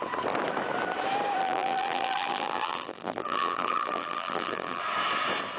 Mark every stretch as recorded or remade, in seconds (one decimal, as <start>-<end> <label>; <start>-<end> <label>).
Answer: 0.0-1.4 recorded; 1.4-4.8 remade; 4.8-5.6 recorded